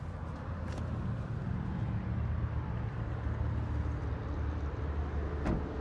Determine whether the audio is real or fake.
real